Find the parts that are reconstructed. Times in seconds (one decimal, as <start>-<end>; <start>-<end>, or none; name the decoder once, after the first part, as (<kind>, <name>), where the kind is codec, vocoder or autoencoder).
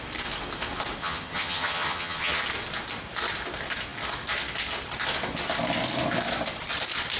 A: 1.0-2.4 (vocoder, HiFi-GAN)